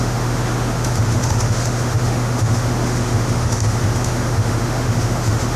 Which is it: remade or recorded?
remade